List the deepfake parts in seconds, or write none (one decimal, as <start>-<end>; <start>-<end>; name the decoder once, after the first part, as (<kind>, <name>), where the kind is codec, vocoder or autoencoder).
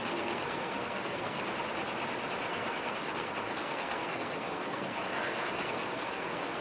0.0-1.4 (codec, SNAC); 2.5-6.6